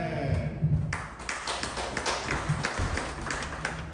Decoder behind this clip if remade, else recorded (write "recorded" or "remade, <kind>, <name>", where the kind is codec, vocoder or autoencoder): recorded